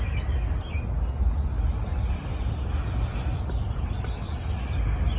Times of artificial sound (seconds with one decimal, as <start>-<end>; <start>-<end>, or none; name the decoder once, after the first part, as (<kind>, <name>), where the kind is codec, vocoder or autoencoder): none

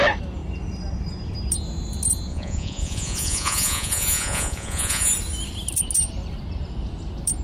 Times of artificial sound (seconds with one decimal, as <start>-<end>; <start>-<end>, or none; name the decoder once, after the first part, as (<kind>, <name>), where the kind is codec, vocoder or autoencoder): 2.3-5.1 (vocoder, Vocos)

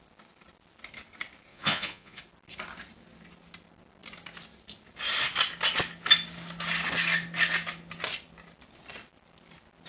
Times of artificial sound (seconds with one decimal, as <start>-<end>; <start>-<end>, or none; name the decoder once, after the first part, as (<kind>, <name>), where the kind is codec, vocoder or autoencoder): 1.5-2.2 (vocoder, Vocos)

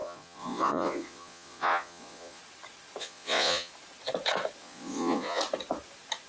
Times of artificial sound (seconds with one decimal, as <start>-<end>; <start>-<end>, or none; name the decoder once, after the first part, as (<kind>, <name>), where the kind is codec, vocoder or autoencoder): 0.0-2.4 (vocoder, Vocos); 3.0-3.7; 4.6-5.4